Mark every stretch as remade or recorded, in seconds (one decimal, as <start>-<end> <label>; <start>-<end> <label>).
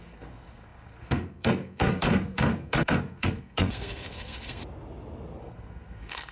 0.0-4.6 remade; 4.6-5.4 recorded; 5.4-6.3 remade